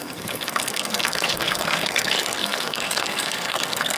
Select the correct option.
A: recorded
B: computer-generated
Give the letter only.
B